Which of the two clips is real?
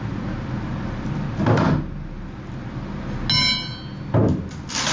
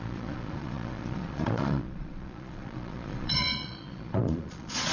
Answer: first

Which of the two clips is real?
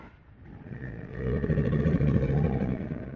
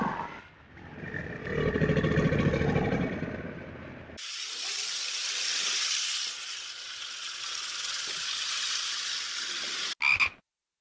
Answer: second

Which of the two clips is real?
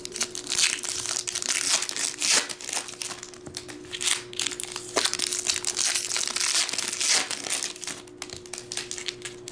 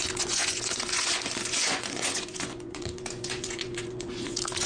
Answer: first